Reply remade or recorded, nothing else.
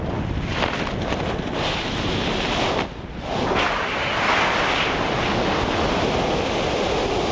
recorded